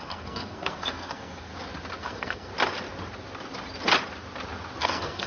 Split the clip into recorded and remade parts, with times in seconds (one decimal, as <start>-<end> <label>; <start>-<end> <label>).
0.0-1.5 remade; 1.5-2.0 recorded; 2.0-2.5 remade; 2.5-4.8 recorded; 4.8-5.3 remade